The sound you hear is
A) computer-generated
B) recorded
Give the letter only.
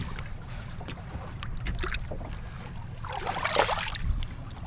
B